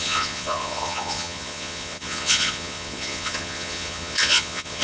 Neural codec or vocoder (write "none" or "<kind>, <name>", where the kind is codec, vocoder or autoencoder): vocoder, Vocos